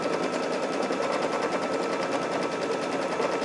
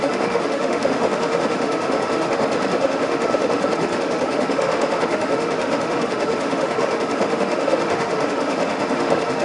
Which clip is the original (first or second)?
first